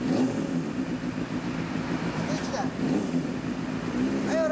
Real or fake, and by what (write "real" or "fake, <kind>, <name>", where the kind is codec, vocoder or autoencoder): real